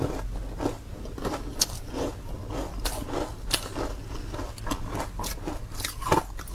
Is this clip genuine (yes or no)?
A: yes